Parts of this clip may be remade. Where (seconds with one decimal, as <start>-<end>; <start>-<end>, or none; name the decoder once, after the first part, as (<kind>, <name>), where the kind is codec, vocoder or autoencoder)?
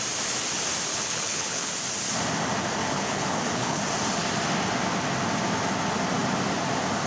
0.9-1.7 (codec, HILCodec); 2.8-3.8